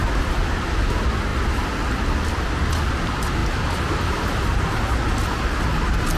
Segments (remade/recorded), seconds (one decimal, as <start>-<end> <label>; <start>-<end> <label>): 0.0-6.2 recorded